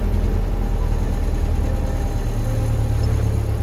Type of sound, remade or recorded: recorded